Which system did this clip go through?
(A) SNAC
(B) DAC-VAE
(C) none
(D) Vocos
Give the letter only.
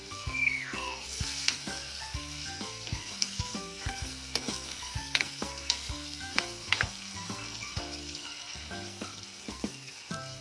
A